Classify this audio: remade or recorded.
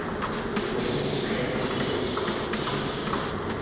recorded